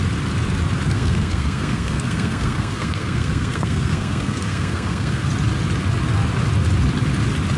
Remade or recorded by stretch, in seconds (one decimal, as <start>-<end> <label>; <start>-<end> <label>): 0.0-0.9 recorded; 0.9-5.3 remade; 5.3-7.6 recorded